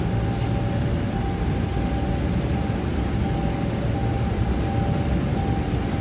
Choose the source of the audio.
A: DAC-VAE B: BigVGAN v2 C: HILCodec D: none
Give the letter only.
D